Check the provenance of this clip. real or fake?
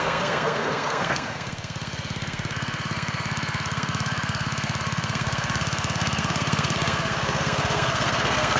fake